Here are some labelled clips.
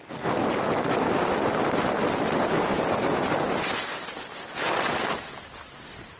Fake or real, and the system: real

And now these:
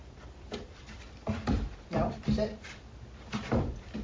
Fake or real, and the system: fake, vocoder, BigVGAN v2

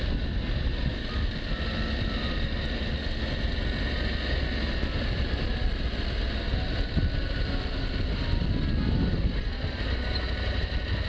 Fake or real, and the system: real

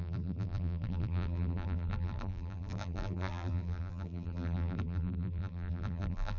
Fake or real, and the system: fake, vocoder, BigVGAN v2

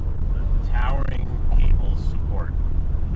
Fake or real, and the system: real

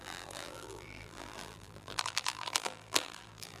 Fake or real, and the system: fake, vocoder, BigVGAN v2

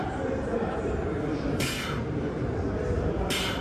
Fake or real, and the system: real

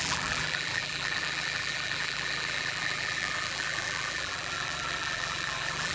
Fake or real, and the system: fake, vocoder, BigVGAN v2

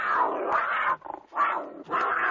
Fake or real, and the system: real